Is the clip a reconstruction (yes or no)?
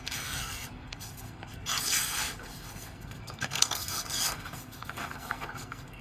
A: yes